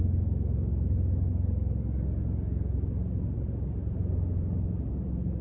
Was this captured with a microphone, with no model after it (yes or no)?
yes